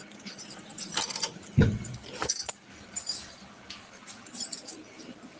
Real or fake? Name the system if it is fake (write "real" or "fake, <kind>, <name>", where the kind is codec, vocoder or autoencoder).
real